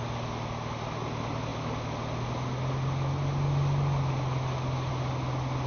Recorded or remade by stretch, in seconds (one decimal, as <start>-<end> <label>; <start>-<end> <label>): 0.0-5.7 recorded